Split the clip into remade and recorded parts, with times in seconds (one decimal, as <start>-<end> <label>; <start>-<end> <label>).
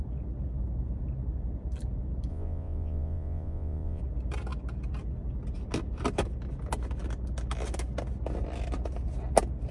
0.0-2.3 recorded; 2.3-4.0 remade; 4.0-9.7 recorded